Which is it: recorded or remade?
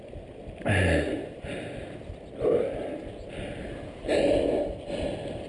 recorded